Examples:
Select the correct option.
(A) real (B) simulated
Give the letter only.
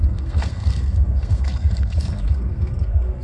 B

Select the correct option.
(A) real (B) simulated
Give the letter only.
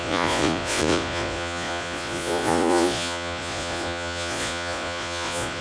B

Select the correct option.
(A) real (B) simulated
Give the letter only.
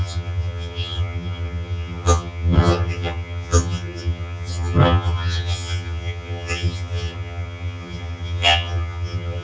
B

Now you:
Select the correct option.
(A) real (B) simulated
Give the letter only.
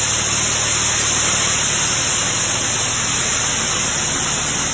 A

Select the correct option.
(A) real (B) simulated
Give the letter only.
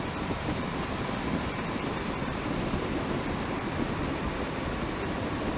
B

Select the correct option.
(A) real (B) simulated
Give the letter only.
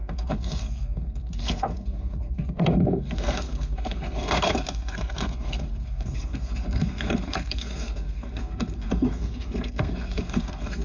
B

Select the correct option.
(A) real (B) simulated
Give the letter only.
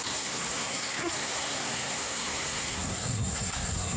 B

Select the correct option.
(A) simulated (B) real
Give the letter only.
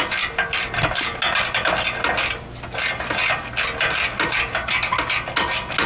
B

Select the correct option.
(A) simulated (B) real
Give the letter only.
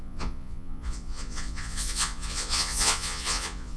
A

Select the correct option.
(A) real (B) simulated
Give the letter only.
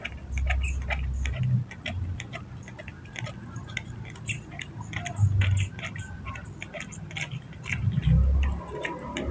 B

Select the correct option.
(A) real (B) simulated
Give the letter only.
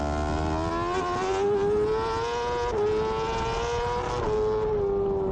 A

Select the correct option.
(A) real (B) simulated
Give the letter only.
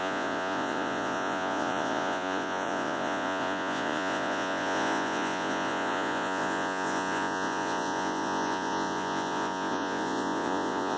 B